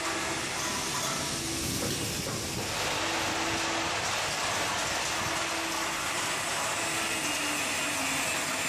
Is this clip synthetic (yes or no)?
no